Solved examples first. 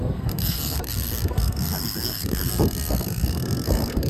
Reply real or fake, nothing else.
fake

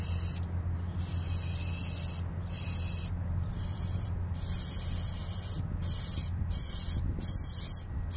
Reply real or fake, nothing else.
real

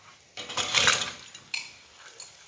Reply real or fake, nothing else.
real